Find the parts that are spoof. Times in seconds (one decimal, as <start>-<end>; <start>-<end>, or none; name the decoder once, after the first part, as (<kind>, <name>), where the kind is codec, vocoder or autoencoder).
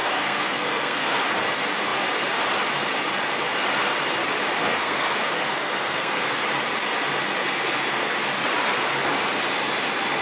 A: 0.0-1.2 (codec, SNAC); 4.6-6.4; 7.4-8.1